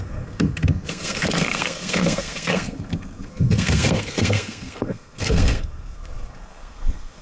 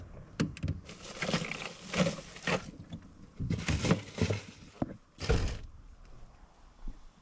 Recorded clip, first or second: second